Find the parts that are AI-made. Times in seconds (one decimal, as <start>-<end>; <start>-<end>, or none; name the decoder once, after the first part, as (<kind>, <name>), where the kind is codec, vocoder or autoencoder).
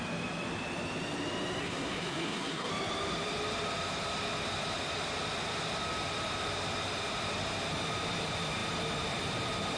1.6-2.7 (codec, SNAC)